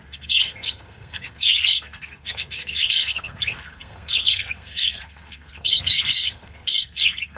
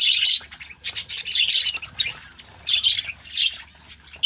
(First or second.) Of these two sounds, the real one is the second